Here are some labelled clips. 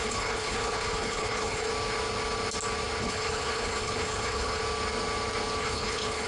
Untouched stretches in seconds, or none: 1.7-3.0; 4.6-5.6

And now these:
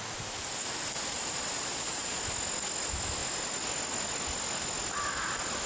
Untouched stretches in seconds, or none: 0.0-1.7; 2.2-5.7

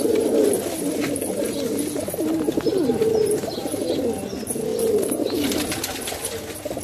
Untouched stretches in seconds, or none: 0.0-2.7; 3.5-4.7; 5.6-6.8

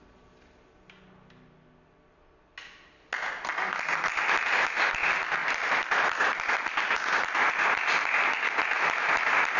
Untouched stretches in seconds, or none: 0.0-9.6

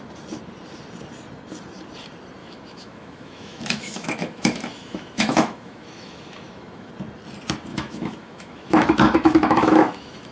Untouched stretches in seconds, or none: 0.0-2.4; 6.9-7.7

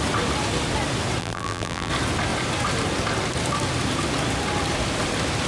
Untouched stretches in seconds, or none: 0.0-1.2; 1.9-5.5

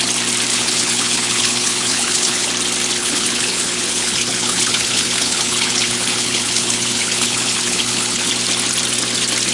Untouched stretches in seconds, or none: 0.0-0.5; 2.5-3.0; 8.3-9.5

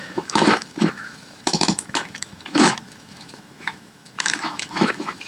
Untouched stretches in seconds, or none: none